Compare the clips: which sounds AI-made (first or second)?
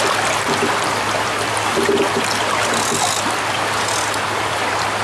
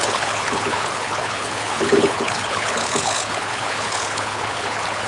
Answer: second